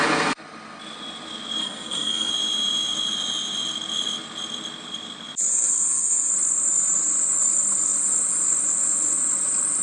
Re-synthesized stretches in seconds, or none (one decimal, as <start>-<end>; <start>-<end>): 1.6-2.3; 5.5-6.3